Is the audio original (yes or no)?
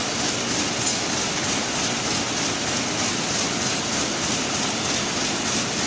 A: yes